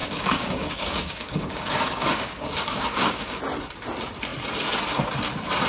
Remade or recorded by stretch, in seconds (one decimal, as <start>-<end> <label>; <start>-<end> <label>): 0.0-3.4 remade; 3.4-5.7 recorded